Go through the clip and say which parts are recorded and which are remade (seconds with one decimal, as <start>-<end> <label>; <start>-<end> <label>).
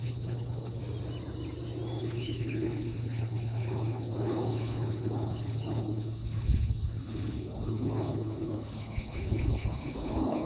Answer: 0.0-0.8 remade; 0.8-2.0 recorded; 2.0-10.5 remade